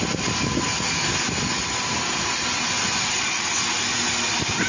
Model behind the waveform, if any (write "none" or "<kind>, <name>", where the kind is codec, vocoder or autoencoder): none